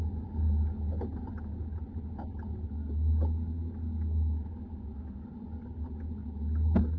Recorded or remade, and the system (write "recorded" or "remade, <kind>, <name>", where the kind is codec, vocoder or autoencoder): recorded